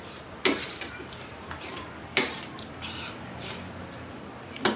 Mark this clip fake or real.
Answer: fake